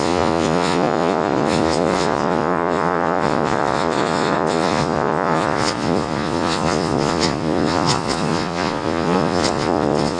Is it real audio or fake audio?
fake